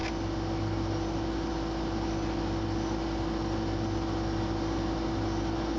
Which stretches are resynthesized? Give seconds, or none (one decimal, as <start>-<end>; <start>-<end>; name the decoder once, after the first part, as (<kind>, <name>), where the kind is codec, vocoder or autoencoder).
none